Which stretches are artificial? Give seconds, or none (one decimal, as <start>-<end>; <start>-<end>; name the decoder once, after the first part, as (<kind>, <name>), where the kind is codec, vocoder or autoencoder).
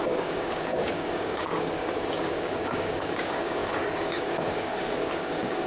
0.0-5.7 (codec, DAC)